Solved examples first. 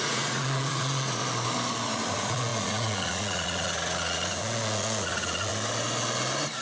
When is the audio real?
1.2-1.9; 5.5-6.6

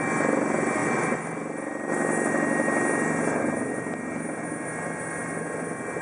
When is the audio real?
0.0-6.0

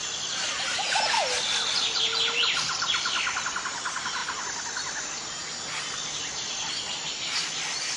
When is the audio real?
0.0-8.0

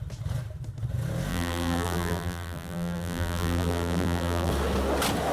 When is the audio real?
0.0-1.3; 4.5-5.3

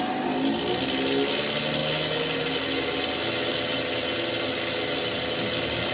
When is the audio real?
0.0-5.9

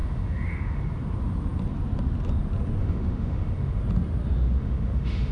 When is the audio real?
0.8-2.8; 3.8-4.6

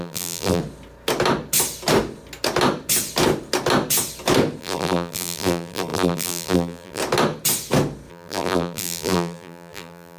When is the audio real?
0.6-4.6; 7.0-8.1

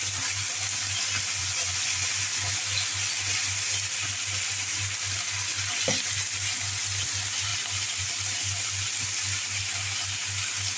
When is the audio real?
0.0-1.4; 2.1-10.8